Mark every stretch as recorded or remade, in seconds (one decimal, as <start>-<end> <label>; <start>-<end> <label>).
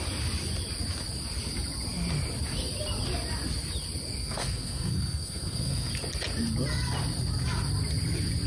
0.0-4.2 recorded; 4.2-5.9 remade; 5.9-8.5 recorded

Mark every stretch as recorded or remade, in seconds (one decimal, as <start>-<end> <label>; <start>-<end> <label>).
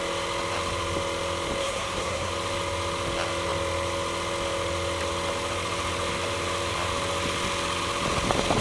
0.0-1.6 recorded; 1.6-2.3 remade; 2.3-8.6 recorded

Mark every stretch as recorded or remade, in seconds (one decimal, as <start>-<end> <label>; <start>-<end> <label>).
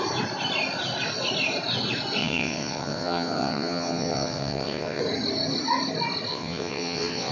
0.0-2.2 recorded; 2.2-5.0 remade; 5.0-6.3 recorded; 6.3-7.3 remade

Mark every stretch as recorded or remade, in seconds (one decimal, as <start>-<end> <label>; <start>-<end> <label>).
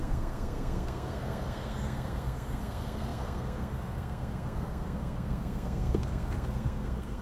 0.0-7.2 remade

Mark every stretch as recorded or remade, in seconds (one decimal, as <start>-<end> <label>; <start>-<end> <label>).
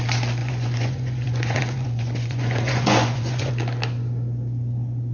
0.0-0.4 recorded; 0.4-3.5 remade; 3.5-5.1 recorded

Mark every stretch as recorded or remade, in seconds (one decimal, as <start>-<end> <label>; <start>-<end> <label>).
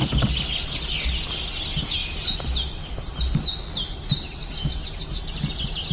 0.0-5.9 recorded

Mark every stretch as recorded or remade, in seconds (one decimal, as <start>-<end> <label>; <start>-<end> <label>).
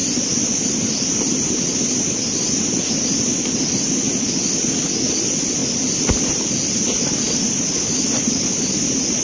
0.0-2.0 remade; 2.0-5.6 recorded; 5.6-7.7 remade; 7.7-9.2 recorded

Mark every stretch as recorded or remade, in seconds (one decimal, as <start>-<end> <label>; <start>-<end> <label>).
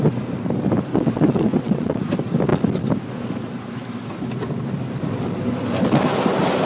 0.0-0.9 recorded; 0.9-2.0 remade; 2.0-6.7 recorded